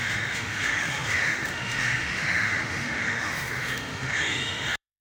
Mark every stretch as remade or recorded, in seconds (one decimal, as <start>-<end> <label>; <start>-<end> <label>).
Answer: 0.0-5.0 remade